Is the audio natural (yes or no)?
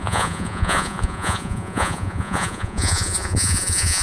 no